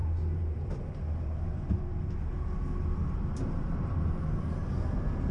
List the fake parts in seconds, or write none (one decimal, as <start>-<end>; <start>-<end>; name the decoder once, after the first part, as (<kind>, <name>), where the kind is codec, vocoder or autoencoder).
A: 0.0-2.5 (vocoder, BigVGAN v2); 3.0-4.2